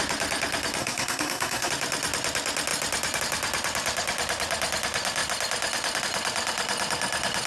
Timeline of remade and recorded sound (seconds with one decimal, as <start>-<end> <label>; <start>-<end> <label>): 0.0-0.8 recorded; 0.8-1.7 remade; 1.7-7.5 recorded